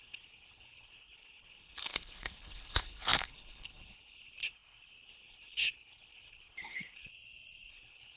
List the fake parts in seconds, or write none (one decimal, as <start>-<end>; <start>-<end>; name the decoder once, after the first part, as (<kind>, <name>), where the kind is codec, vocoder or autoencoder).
0.0-7.1 (codec, HILCodec); 7.7-8.2